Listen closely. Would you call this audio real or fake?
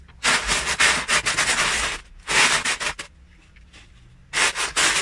real